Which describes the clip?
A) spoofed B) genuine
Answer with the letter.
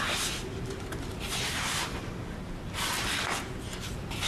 B